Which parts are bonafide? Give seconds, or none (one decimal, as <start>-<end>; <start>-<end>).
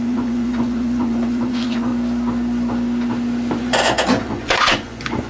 1.9-3.6